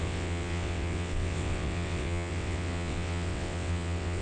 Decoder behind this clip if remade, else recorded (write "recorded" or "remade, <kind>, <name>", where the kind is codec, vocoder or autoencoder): remade, vocoder, WaveNeXt